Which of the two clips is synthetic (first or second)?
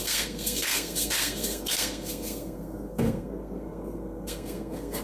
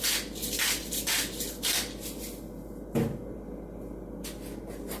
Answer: first